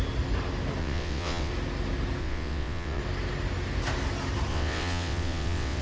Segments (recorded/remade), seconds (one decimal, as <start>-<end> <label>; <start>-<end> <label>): 0.0-0.8 recorded; 0.8-1.5 remade; 1.5-2.2 recorded; 2.2-3.0 remade; 3.0-4.5 recorded; 4.5-5.8 remade